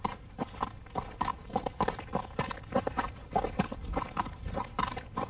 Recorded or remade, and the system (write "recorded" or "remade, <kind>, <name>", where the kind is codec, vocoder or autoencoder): remade, vocoder, BigVGAN v2